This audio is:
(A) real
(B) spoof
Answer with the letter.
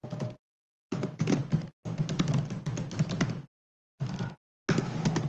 A